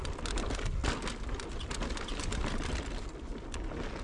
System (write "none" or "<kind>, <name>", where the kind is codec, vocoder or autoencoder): none